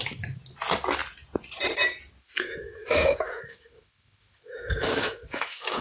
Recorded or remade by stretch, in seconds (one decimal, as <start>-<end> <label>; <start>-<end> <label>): 0.0-2.2 recorded; 2.2-5.8 remade